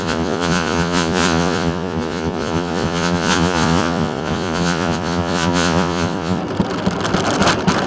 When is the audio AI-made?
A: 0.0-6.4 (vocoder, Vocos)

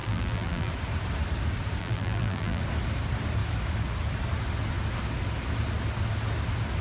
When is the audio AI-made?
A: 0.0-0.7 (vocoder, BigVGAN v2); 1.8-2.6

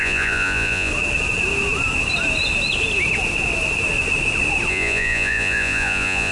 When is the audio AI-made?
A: 0.0-0.9 (vocoder, Vocos); 4.7-6.3

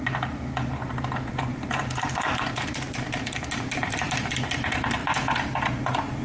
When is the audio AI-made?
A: 1.5-4.3 (vocoder, BigVGAN v2)

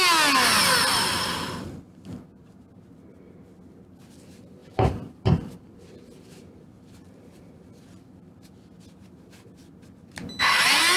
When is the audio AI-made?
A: 0.5-2.8 (vocoder, BigVGAN v2); 4.6-8.8

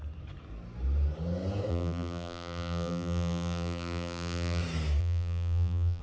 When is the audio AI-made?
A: 1.7-4.6 (vocoder, BigVGAN v2); 5.0-6.0